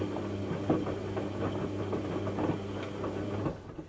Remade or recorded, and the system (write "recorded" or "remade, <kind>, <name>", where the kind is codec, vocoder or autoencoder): recorded